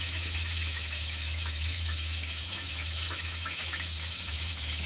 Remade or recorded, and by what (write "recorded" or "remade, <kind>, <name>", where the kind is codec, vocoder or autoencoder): remade, autoencoder, DAC-VAE